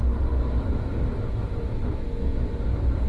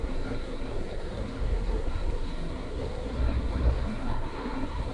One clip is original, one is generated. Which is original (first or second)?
first